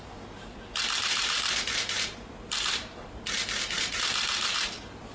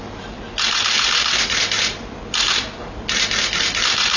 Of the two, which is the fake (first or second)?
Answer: first